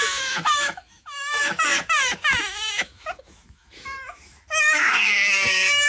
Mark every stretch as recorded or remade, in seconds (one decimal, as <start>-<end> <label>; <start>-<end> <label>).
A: 0.0-5.9 remade